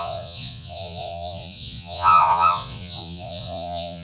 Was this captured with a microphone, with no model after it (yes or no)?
no